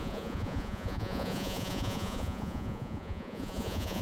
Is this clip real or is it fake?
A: fake